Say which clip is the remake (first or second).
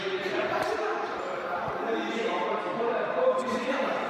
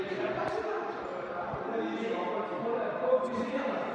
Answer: first